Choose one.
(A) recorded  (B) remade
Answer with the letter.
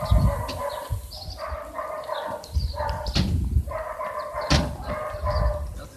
A